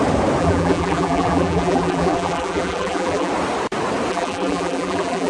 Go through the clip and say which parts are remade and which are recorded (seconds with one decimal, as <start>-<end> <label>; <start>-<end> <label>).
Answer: 0.0-0.4 recorded; 0.4-3.3 remade; 3.3-4.1 recorded; 4.1-5.3 remade